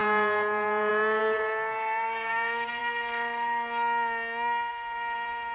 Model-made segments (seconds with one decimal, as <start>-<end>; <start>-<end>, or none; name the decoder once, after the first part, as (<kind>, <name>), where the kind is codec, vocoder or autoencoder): 0.0-2.8 (vocoder, BigVGAN v2); 4.7-5.5